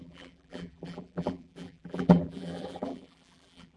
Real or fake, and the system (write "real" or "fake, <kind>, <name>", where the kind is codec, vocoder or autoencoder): fake, vocoder, BigVGAN v2